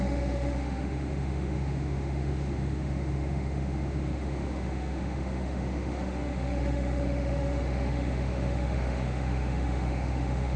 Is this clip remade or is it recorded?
remade